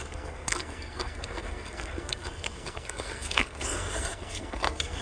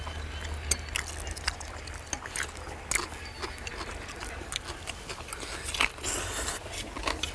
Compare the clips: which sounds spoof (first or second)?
first